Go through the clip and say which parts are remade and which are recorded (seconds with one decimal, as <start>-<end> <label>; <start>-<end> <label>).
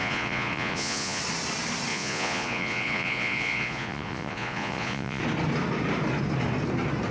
0.0-1.2 remade; 1.2-1.9 recorded; 1.9-5.2 remade; 5.2-7.1 recorded